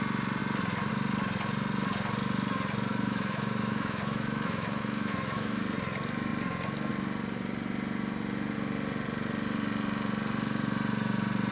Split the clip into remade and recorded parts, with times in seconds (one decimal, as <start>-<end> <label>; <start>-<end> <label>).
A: 0.0-2.9 recorded; 2.9-5.6 remade; 5.6-11.5 recorded